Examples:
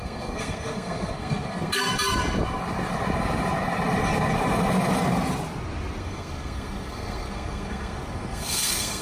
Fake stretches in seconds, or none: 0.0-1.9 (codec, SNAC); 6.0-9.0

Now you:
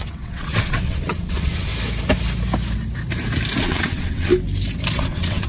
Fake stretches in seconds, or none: 0.0-1.7 (vocoder, WaveNeXt); 3.6-4.3; 4.9-5.5

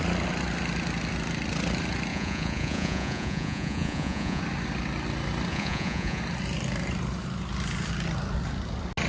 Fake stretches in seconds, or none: 2.1-4.4 (vocoder, Vocos); 5.5-6.2